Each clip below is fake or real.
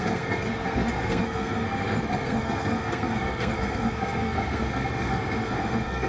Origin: fake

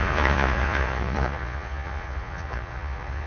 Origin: fake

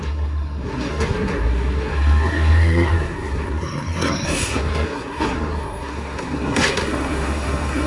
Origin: fake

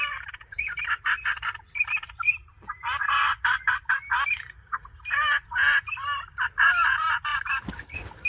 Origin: fake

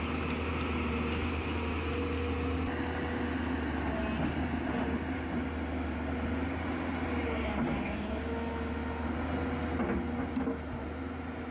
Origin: real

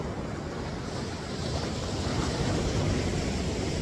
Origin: real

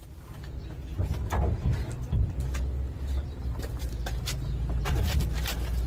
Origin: real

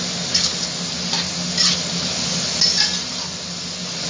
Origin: real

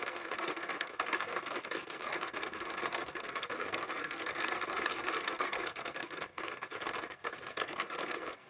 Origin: fake